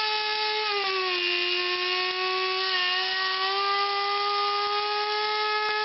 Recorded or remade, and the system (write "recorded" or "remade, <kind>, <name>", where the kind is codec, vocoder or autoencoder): recorded